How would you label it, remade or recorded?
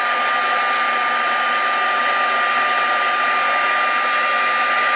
recorded